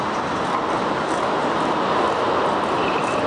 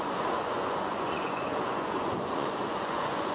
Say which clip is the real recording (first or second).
first